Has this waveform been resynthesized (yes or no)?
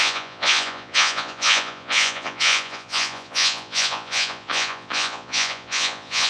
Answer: yes